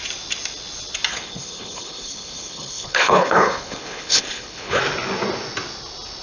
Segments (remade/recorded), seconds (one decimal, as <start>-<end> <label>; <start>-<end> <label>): 0.0-1.1 recorded; 1.1-4.8 remade; 4.8-6.2 recorded